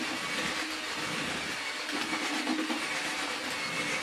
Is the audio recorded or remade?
recorded